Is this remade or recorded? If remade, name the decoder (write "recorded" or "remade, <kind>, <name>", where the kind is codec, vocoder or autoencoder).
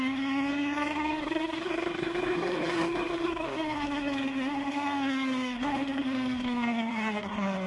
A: remade, codec, SNAC